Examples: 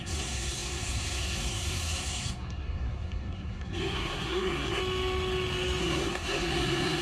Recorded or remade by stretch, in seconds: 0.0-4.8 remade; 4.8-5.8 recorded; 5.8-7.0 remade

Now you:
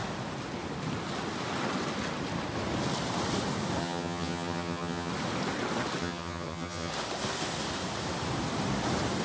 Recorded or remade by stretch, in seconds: 0.0-3.8 recorded; 3.8-5.1 remade; 5.1-6.0 recorded; 6.0-6.9 remade; 6.9-9.2 recorded

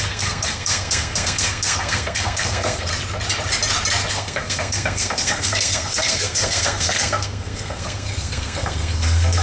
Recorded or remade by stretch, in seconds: 0.0-2.9 remade; 2.9-4.1 recorded; 4.1-9.4 remade

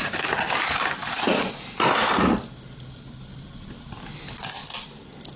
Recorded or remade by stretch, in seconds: 0.0-5.4 recorded